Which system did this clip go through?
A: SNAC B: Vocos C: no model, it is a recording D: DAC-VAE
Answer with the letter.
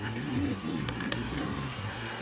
A